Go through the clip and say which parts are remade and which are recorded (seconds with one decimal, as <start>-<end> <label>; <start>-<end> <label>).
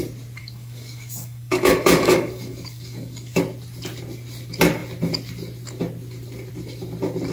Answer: 0.0-0.4 recorded; 0.4-3.4 remade; 3.4-7.3 recorded